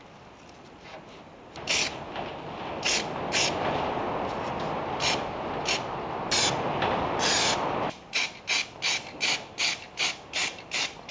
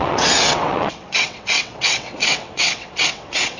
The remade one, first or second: second